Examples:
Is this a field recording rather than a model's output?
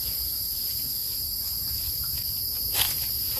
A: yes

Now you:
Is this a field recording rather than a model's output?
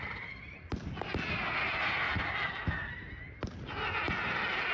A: yes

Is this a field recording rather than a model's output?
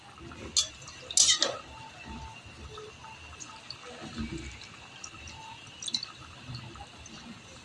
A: yes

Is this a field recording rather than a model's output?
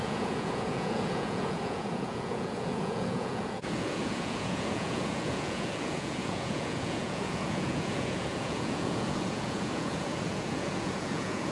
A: no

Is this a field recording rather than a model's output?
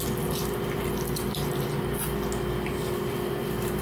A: yes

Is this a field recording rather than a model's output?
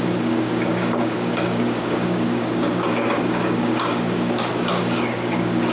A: no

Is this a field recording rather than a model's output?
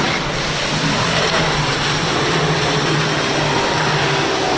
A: yes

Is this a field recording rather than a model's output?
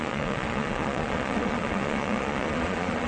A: no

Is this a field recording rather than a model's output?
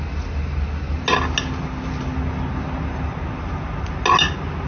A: yes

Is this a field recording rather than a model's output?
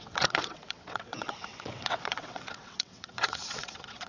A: no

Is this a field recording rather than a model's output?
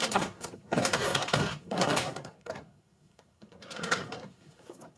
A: no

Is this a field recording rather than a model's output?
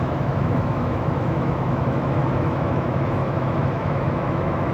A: no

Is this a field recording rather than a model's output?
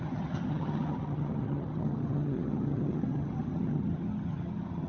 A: no